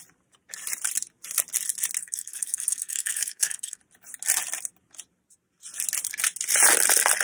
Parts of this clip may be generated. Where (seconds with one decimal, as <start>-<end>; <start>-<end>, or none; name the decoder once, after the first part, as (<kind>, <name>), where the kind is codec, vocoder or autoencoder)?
2.0-3.8 (codec, SNAC)

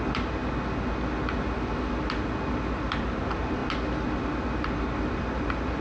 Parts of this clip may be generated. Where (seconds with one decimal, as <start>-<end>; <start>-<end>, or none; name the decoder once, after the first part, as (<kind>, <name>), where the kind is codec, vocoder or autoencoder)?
0.0-0.4 (vocoder, BigVGAN v2); 2.7-3.6; 4.6-5.8

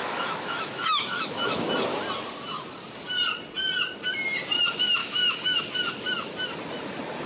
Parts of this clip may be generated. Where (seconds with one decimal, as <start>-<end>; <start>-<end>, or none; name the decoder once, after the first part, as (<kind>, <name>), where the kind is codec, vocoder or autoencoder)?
0.0-1.7 (autoencoder, DAC-VAE); 5.0-5.6

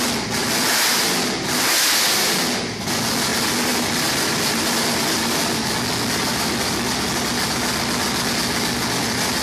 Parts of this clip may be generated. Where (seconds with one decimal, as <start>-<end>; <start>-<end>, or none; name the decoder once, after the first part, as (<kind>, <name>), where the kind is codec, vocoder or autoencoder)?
none

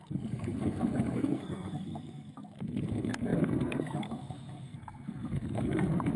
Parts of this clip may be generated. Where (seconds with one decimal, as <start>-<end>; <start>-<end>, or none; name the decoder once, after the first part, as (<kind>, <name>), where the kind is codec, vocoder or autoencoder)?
0.0-6.2 (codec, SNAC)

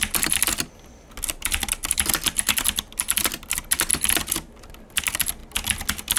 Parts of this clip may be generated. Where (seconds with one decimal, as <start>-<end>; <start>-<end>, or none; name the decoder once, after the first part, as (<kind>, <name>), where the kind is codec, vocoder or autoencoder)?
none